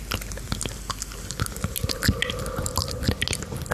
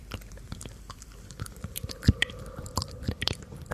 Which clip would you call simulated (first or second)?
second